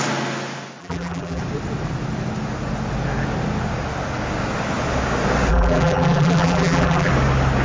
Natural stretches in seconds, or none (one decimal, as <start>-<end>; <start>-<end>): 0.0-0.8; 1.4-5.5; 7.1-7.6